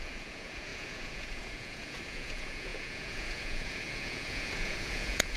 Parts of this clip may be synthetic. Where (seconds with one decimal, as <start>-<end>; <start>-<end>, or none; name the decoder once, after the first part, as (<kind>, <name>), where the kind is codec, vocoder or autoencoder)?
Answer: 0.0-5.4 (vocoder, Vocos)